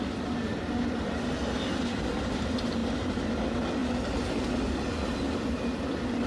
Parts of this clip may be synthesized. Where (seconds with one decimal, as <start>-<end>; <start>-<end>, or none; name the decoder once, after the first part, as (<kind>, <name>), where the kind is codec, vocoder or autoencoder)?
none